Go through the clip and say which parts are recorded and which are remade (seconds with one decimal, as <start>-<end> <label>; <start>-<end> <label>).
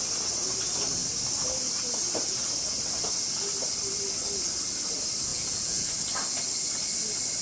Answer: 0.0-5.3 recorded; 5.3-5.9 remade; 5.9-7.4 recorded